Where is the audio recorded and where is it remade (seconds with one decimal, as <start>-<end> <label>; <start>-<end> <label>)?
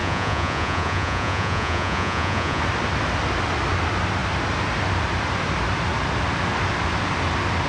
0.0-2.6 remade; 2.6-7.7 recorded